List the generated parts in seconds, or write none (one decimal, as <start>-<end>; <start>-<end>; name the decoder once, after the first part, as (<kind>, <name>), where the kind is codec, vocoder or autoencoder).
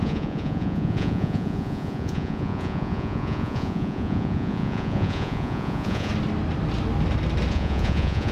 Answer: 0.0-6.1 (vocoder, Vocos); 7.5-8.3